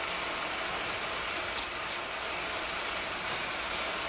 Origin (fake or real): real